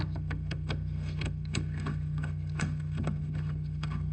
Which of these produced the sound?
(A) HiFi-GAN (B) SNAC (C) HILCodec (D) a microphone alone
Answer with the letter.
B